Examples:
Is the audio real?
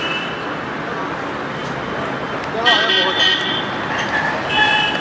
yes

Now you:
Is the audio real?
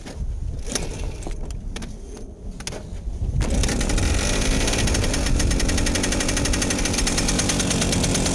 yes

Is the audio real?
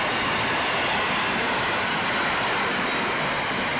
yes